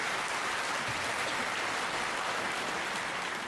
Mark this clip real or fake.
real